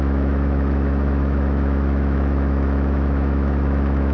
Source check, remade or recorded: remade